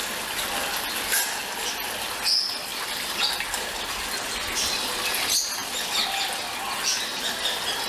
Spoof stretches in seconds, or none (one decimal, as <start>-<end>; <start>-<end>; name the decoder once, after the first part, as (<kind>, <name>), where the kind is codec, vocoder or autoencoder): none